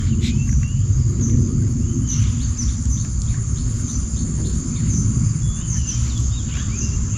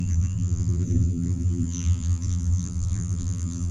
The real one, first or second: first